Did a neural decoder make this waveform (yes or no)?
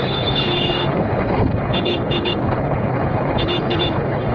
yes